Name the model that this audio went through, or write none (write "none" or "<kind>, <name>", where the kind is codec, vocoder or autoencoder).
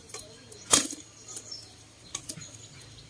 vocoder, BigVGAN v2